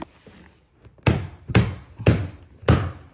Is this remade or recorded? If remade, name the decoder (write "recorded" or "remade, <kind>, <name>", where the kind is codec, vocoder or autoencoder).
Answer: recorded